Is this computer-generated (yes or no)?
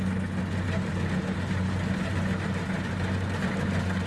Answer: no